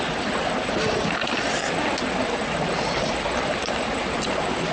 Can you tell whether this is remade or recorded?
recorded